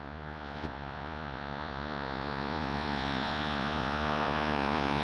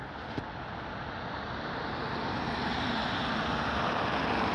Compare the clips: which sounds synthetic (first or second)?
first